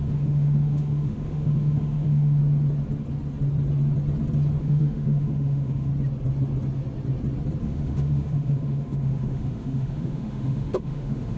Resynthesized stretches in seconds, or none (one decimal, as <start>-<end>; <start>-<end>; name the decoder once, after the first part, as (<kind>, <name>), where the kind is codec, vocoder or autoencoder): 0.0-2.4 (autoencoder, DAC-VAE); 4.6-5.9; 7.6-11.4